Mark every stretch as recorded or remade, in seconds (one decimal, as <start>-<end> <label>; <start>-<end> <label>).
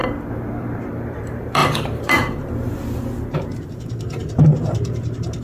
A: 0.0-0.6 recorded; 0.6-5.4 remade